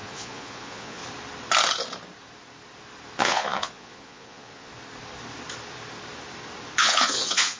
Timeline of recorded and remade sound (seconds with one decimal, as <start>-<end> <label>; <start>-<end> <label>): 0.0-1.0 remade; 1.0-3.2 recorded; 3.2-4.7 remade; 4.7-6.8 recorded; 6.8-7.6 remade